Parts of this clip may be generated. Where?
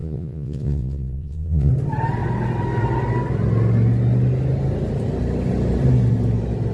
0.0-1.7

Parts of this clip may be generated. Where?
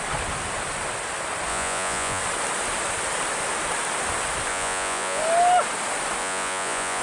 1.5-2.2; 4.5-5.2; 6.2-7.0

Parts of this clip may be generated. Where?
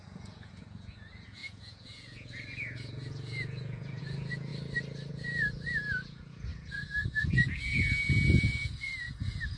0.0-4.5; 5.1-9.6